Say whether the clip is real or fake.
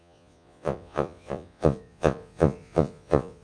fake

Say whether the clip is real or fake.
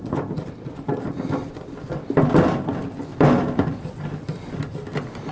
real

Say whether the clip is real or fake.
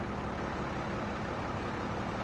real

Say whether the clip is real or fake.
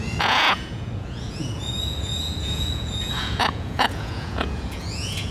fake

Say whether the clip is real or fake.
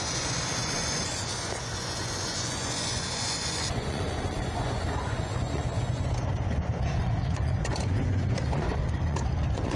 fake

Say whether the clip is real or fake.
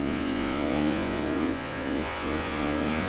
fake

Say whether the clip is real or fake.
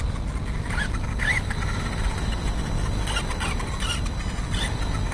real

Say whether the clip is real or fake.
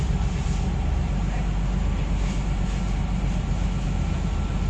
real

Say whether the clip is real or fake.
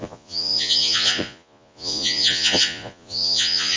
fake